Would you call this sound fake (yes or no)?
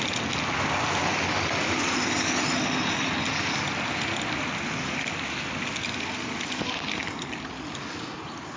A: no